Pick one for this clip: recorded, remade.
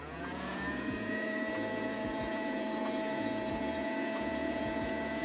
remade